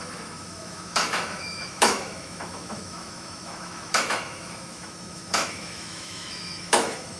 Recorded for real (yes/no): no